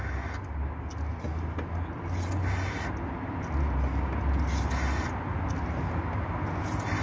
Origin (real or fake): real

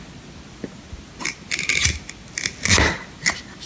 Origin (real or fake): real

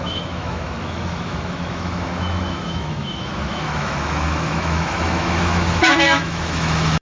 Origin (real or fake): fake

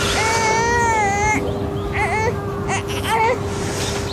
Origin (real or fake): real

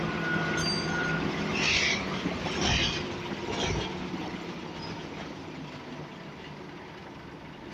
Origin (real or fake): real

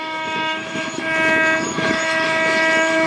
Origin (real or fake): fake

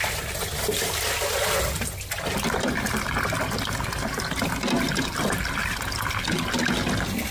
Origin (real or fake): real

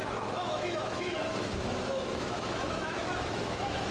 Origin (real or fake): fake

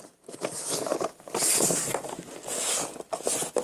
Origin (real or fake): real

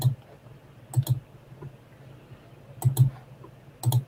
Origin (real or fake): real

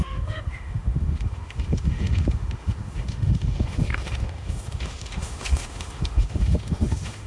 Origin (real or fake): fake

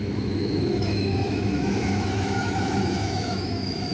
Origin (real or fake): fake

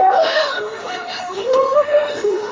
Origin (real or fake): fake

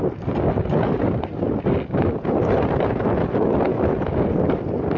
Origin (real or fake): real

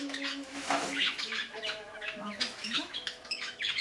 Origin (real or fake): fake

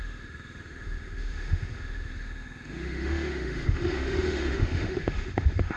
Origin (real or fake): fake